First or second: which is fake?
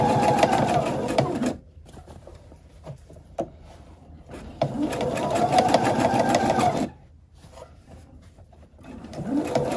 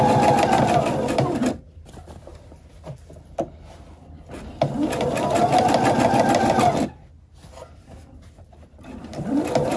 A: first